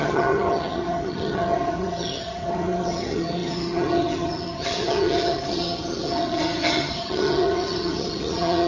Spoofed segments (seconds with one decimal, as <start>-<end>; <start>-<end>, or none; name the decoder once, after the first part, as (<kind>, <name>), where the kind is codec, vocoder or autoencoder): 0.0-8.7 (vocoder, HiFi-GAN)

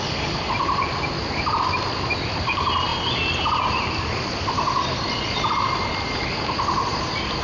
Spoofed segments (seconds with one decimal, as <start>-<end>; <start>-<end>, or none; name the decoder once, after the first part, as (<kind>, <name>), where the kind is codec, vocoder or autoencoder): none

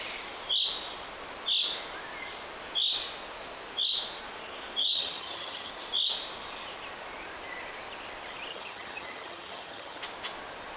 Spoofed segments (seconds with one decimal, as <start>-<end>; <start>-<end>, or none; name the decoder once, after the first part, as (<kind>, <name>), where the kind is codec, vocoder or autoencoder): 4.8-5.7 (vocoder, HiFi-GAN); 8.5-10.0